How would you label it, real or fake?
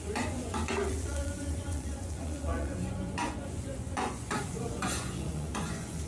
fake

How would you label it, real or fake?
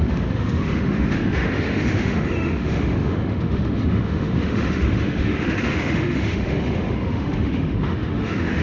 fake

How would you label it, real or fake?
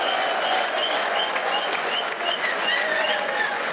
fake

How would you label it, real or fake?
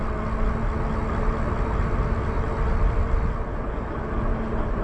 real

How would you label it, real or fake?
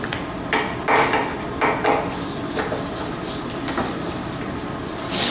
real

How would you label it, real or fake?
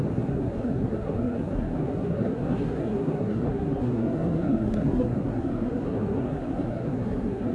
fake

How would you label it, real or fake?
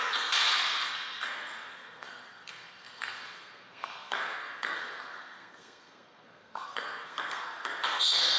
fake